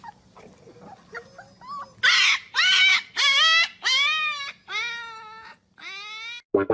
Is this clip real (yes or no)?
yes